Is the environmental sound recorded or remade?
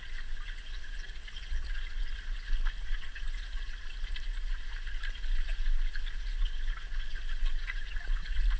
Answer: recorded